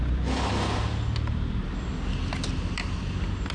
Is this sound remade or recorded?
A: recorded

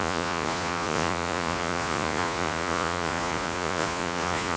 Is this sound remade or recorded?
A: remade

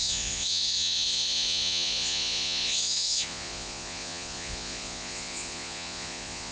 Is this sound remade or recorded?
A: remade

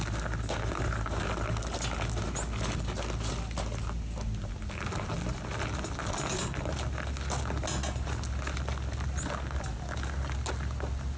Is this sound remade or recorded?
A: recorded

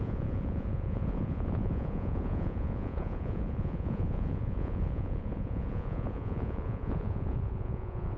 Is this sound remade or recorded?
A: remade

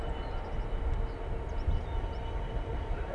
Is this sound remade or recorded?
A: recorded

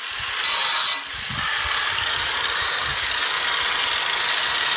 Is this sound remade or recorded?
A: recorded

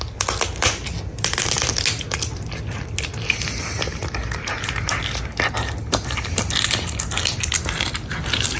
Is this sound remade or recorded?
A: recorded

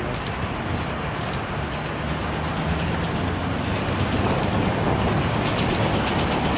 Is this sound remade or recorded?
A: recorded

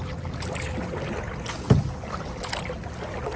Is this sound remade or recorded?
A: recorded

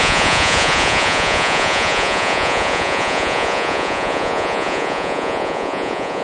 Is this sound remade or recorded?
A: remade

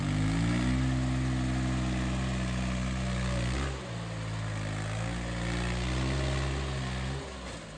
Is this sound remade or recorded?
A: recorded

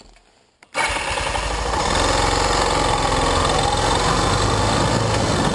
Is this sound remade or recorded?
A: recorded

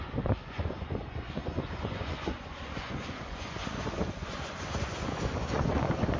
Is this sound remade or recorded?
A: remade